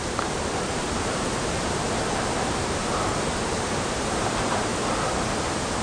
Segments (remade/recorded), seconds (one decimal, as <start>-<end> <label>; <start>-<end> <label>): 0.0-2.8 remade; 2.8-3.5 recorded; 3.5-4.7 remade; 4.7-5.8 recorded